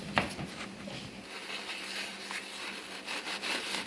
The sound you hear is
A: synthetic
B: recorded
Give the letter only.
B